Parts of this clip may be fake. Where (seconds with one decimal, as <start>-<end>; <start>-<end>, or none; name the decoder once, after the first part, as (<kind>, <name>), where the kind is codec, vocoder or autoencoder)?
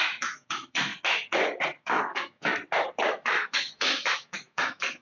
0.0-0.9 (autoencoder, DAC-VAE); 1.8-2.5; 3.1-5.0